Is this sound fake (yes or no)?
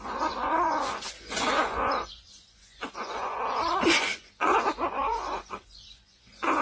yes